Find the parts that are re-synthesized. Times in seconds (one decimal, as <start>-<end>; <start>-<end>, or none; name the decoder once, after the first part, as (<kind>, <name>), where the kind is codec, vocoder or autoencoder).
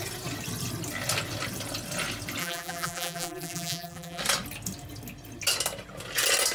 2.4-4.2 (vocoder, BigVGAN v2)